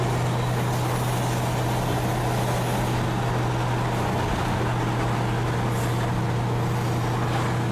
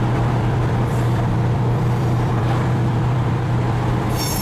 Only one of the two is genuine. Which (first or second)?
first